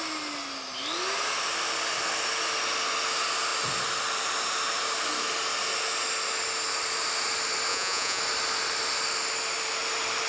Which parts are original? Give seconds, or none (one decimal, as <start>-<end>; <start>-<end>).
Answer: 0.0-7.7; 8.2-10.3